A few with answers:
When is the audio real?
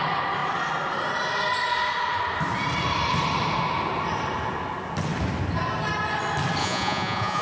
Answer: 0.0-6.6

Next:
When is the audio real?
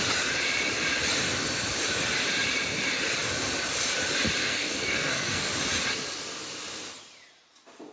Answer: 0.0-4.4; 5.5-7.9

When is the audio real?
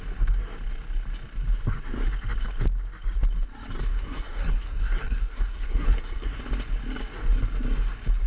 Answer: 0.0-3.9; 6.4-8.3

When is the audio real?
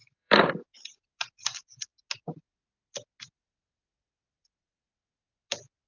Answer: 0.5-5.9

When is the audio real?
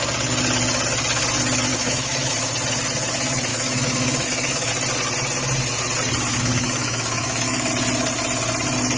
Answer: 0.0-1.7; 2.3-3.5; 4.7-6.3; 7.7-9.0